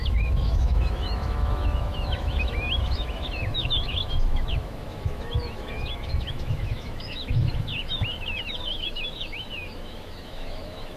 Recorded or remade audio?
remade